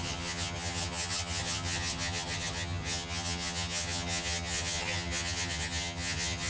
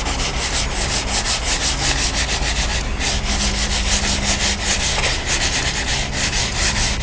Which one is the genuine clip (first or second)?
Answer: second